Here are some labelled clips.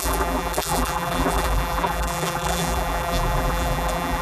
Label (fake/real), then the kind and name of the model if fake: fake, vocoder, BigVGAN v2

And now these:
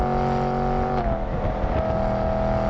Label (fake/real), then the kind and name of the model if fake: real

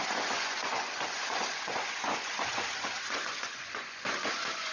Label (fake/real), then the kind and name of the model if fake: fake, vocoder, Vocos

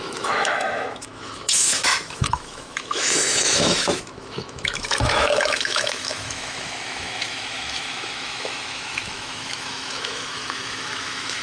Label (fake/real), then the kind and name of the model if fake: fake, autoencoder, DAC-VAE